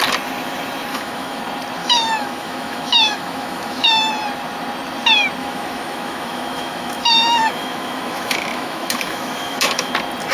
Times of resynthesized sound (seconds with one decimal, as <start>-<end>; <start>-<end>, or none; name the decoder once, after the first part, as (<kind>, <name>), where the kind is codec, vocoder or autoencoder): 0.9-1.4 (autoencoder, DAC-VAE); 1.8-4.1; 5.4-9.9